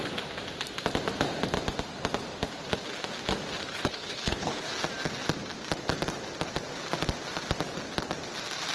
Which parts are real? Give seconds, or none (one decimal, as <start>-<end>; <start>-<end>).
0.0-3.7; 4.7-8.7